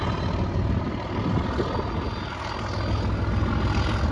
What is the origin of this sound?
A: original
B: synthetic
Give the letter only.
A